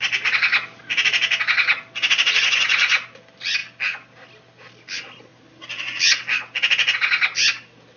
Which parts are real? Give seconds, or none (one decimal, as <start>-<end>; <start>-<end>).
0.0-8.0